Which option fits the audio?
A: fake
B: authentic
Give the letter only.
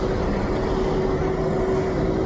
B